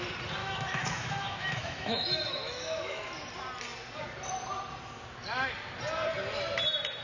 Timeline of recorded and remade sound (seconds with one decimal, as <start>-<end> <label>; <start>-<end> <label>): 0.0-0.4 recorded; 0.4-3.1 remade; 3.1-7.0 recorded